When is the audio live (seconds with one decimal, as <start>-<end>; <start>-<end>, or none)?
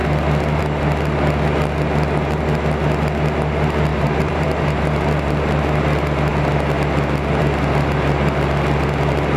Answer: 0.0-3.9; 5.3-9.4